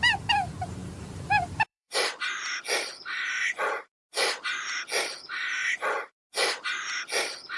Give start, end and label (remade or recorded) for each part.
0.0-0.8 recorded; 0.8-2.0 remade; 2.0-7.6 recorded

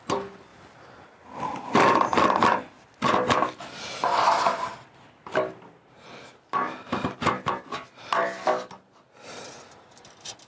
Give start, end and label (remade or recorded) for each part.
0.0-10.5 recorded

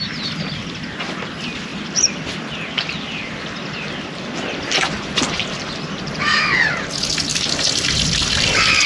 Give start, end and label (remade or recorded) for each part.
0.0-1.7 recorded; 1.7-6.4 remade; 6.4-7.3 recorded; 7.3-8.9 remade

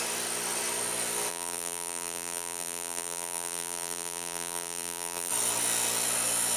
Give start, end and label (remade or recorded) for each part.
0.0-1.3 recorded; 1.3-5.3 remade; 5.3-6.6 recorded

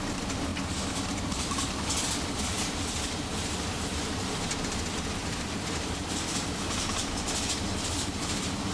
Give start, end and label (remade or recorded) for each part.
0.0-0.5 remade; 0.5-2.4 recorded; 2.4-8.7 remade

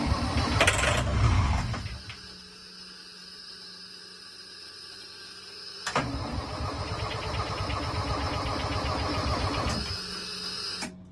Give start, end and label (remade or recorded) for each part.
0.0-9.1 recorded; 9.1-9.7 remade; 9.7-11.1 recorded

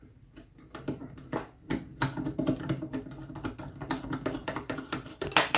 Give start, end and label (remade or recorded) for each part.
0.0-4.4 recorded; 4.4-5.6 remade